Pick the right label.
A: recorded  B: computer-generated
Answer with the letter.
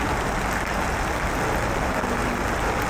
A